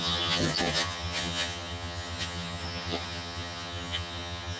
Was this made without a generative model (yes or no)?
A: no